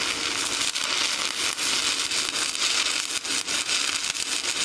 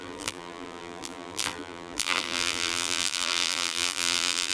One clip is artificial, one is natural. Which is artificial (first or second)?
second